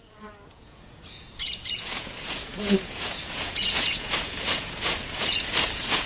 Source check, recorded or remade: remade